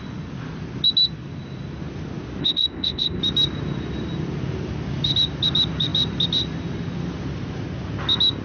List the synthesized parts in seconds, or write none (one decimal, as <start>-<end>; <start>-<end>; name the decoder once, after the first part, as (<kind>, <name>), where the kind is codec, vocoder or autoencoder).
2.4-3.2 (codec, ZipCodec)